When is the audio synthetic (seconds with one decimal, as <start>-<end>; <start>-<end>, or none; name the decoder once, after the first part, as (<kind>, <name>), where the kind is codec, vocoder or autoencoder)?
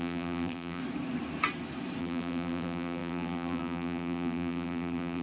0.0-0.8 (vocoder, BigVGAN v2); 2.0-5.2